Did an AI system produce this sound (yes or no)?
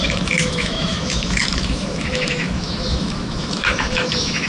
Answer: yes